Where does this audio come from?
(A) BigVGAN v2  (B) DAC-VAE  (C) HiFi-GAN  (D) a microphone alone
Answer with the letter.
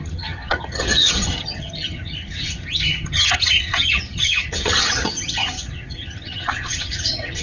C